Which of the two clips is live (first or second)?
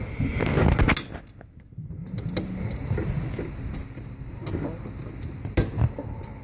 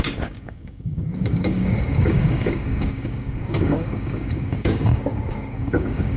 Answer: first